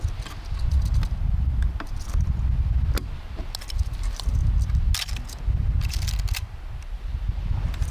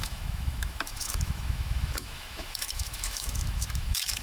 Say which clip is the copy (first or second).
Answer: second